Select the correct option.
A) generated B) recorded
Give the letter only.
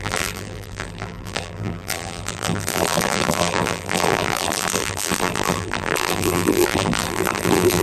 A